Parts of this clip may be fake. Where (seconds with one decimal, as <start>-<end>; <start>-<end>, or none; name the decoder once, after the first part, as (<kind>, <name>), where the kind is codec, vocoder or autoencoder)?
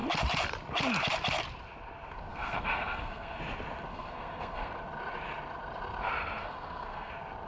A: 2.3-3.4 (codec, SNAC); 3.9-4.7; 6.4-7.1